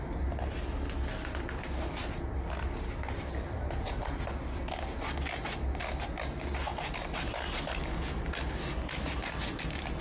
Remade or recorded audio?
recorded